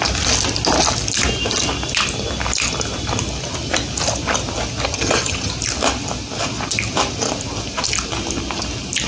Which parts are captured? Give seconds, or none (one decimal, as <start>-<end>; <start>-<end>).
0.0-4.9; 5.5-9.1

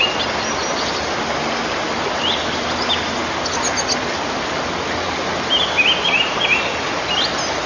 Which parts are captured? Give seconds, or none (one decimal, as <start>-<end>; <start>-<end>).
0.0-7.7

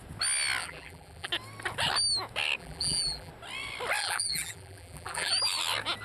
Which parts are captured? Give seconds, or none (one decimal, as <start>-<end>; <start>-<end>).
0.0-0.6; 1.3-2.6; 3.3-4.0; 5.3-6.0

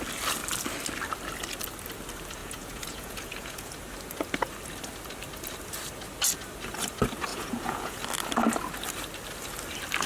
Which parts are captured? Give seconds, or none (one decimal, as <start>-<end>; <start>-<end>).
0.0-2.4; 3.7-7.3; 8.0-10.1

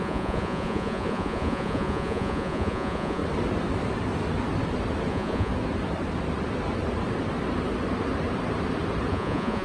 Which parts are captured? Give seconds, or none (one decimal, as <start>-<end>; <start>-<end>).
3.2-5.1; 5.5-9.1

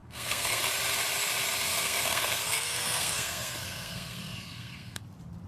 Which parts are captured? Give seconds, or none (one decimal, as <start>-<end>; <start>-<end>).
0.6-1.7; 5.0-5.5

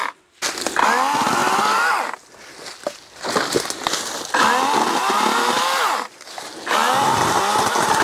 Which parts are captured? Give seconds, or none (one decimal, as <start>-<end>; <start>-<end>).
0.0-1.4; 2.0-6.8; 7.4-8.0

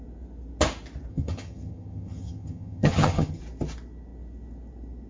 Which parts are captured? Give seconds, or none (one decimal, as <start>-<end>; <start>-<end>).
0.0-1.1; 3.4-5.1